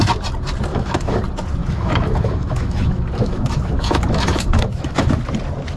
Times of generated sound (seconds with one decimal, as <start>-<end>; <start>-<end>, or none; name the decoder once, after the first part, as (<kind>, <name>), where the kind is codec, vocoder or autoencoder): 0.7-1.2 (autoencoder, DAC-VAE); 1.6-5.1